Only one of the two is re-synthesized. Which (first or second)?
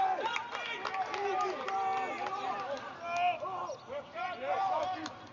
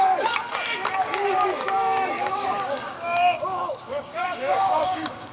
second